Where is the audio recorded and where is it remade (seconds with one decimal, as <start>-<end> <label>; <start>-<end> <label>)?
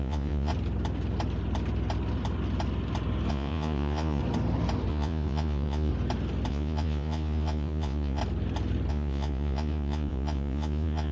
0.0-0.5 remade; 0.5-3.3 recorded; 3.3-4.2 remade; 4.2-4.9 recorded; 4.9-5.9 remade; 5.9-6.5 recorded; 6.5-8.2 remade; 8.2-8.9 recorded; 8.9-11.1 remade